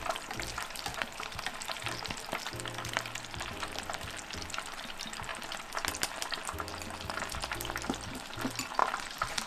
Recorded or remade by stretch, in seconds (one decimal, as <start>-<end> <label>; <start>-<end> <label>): 0.0-9.5 recorded